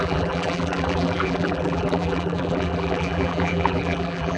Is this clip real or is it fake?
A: fake